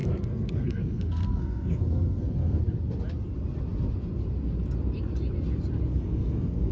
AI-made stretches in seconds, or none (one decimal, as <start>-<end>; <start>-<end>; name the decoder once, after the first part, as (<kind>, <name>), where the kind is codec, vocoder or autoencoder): 0.0-2.6 (codec, SNAC); 5.9-6.7